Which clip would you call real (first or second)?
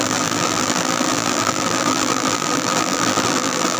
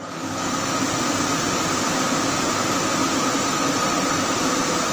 second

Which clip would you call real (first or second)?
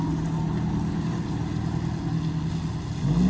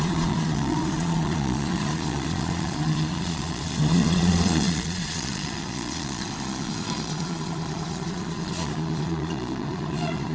first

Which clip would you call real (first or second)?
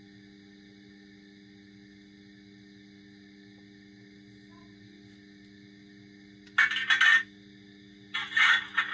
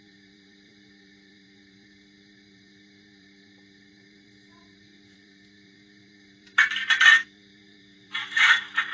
first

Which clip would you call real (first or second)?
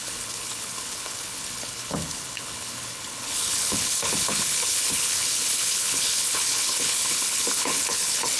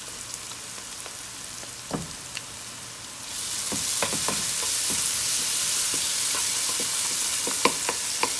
second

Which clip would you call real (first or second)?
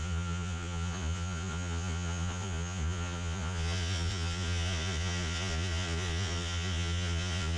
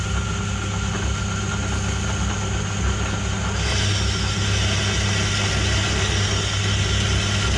second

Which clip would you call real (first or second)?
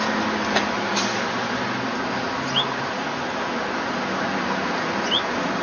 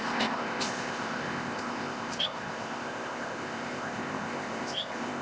first